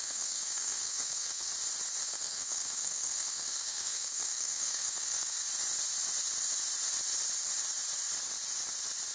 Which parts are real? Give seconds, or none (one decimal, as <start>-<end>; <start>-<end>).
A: 1.5-2.0; 5.4-9.1